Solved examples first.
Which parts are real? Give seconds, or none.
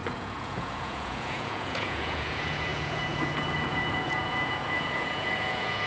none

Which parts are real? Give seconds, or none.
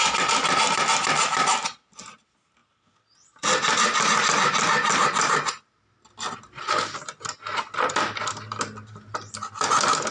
0.0-10.1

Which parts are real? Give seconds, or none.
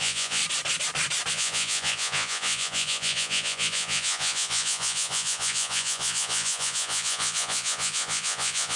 0.4-1.3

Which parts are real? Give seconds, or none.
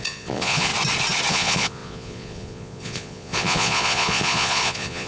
0.7-1.3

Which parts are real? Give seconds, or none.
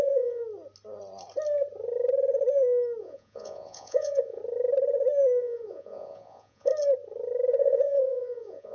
0.4-3.0; 4.4-5.4; 6.7-7.5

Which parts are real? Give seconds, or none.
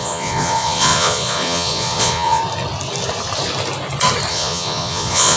2.4-4.3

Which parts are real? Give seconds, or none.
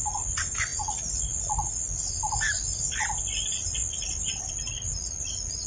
0.0-5.7